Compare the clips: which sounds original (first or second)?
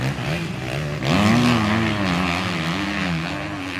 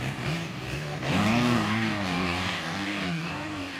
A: first